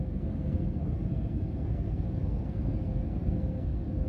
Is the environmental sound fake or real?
fake